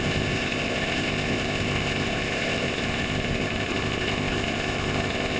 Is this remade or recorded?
remade